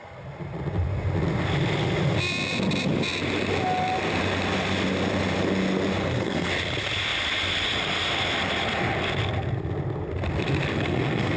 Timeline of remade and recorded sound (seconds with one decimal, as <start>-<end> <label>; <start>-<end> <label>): 0.0-6.0 recorded; 6.0-6.5 remade; 6.5-10.7 recorded; 10.7-11.4 remade